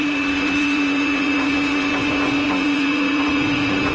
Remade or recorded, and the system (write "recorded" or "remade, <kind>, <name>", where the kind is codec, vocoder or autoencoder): remade, vocoder, Vocos